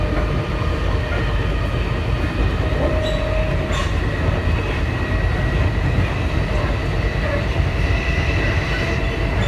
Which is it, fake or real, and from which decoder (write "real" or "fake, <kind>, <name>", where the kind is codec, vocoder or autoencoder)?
real